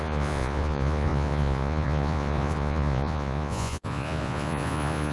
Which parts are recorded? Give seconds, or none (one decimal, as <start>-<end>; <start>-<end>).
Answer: none